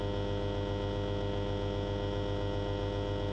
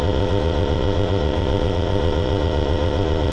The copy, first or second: second